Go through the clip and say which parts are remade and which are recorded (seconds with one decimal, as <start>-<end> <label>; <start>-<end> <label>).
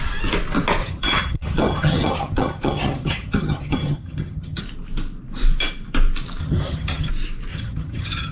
0.0-0.8 recorded; 0.8-4.6 remade; 4.6-6.4 recorded; 6.4-7.1 remade; 7.1-7.5 recorded; 7.5-8.3 remade